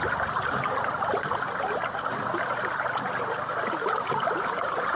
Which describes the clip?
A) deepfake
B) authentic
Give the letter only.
A